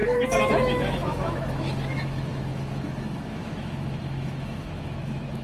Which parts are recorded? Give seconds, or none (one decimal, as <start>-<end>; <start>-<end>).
0.0-0.5